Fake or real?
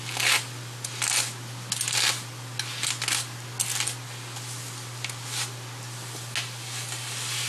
real